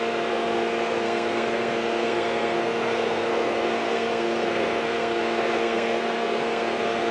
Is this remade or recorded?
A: remade